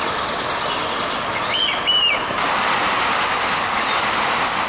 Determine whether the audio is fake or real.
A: real